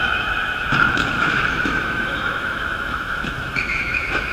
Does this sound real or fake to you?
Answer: fake